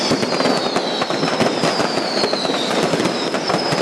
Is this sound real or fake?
real